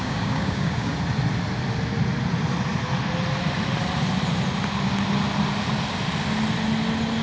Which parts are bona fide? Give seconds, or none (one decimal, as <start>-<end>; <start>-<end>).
0.9-7.2